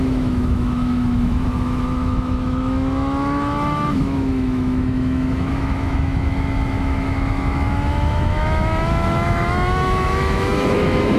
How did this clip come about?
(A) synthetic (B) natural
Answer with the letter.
A